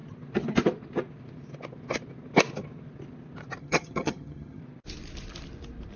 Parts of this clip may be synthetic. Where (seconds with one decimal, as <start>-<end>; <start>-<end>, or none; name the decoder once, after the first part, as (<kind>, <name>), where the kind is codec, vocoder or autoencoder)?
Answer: 3.6-4.6 (vocoder, HiFi-GAN)